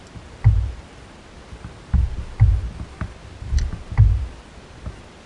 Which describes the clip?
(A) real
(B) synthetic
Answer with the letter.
A